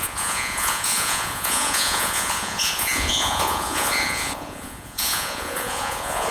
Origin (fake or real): fake